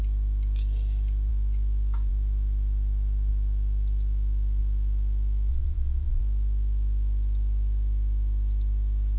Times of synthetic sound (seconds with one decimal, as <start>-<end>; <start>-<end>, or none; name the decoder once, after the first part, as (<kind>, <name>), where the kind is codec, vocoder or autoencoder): 5.5-6.2 (vocoder, Vocos)